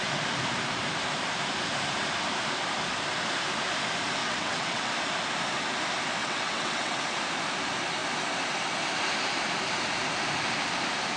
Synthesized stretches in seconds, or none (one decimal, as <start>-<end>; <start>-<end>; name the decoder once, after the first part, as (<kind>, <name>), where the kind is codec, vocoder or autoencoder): 4.2-4.9 (vocoder, WaveNeXt); 6.2-7.0